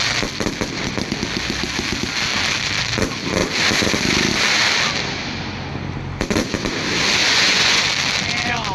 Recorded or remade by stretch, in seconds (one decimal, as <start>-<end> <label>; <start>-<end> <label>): 0.0-7.2 recorded; 7.2-7.8 remade; 7.8-8.7 recorded